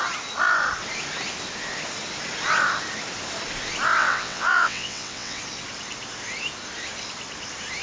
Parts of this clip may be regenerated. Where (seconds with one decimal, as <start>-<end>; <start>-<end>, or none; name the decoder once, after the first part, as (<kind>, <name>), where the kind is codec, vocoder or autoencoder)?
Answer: 4.0-5.4 (vocoder, WaveNeXt)